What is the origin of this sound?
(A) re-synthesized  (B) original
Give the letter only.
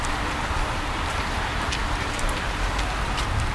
B